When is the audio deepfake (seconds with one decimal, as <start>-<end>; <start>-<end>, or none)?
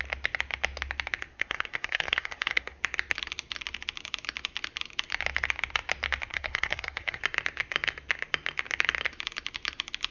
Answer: 1.3-2.8; 6.3-7.2